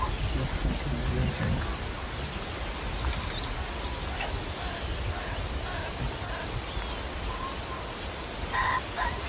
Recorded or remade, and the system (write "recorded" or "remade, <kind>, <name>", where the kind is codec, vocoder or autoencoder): recorded